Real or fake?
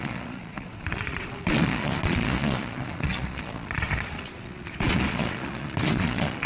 fake